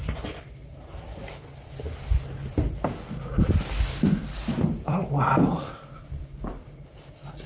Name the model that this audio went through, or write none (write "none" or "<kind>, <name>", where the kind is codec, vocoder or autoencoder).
vocoder, BigVGAN v2